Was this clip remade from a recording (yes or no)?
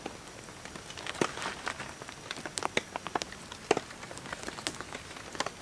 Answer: no